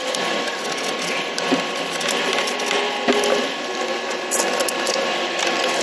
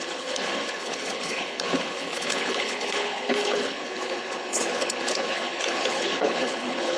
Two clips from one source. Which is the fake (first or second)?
second